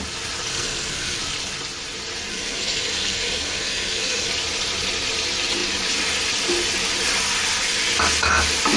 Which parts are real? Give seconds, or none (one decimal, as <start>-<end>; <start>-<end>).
0.0-0.5; 1.2-2.3; 4.3-8.8